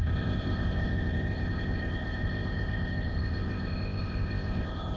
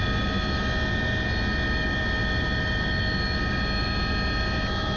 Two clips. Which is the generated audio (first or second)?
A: first